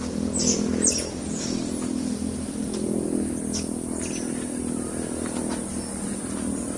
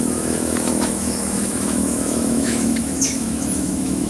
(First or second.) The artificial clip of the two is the second